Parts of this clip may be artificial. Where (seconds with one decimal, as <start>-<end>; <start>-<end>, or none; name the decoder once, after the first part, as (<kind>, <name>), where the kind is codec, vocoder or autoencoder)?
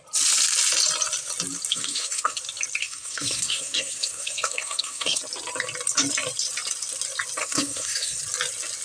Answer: 1.7-2.4 (codec, SNAC); 2.8-5.2; 7.4-8.2